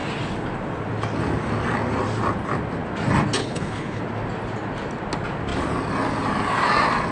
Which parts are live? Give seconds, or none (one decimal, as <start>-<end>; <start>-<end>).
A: 0.0-3.4; 4.0-7.1